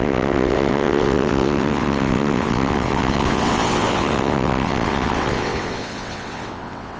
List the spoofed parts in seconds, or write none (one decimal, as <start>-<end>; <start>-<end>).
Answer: 0.0-7.0